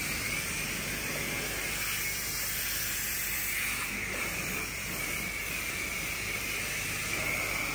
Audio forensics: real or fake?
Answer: real